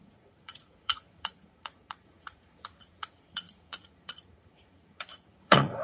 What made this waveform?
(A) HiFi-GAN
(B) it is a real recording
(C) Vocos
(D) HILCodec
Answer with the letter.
C